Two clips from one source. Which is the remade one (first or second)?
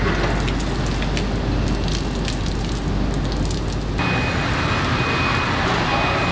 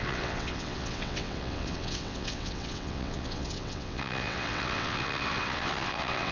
second